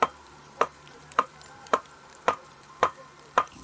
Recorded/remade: remade